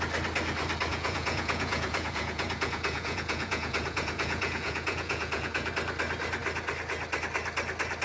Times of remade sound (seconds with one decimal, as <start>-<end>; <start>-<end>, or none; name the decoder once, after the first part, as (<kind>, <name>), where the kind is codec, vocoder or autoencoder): 0.9-5.7 (vocoder, Vocos)